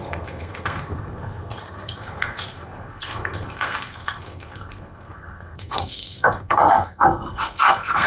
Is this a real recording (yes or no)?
no